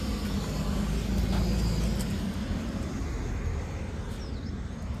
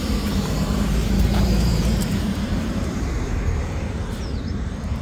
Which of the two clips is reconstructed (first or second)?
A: second